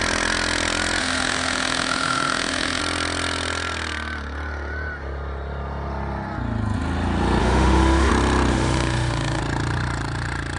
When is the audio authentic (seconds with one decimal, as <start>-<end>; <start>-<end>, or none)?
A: 0.0-1.0; 2.8-7.4; 8.1-8.5; 9.4-10.6

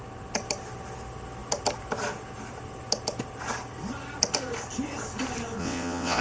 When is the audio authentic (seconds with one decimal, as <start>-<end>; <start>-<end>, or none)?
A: 0.0-5.6

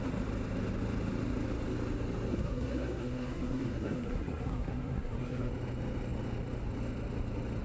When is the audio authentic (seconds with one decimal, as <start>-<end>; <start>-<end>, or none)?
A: 0.0-2.3; 5.5-7.6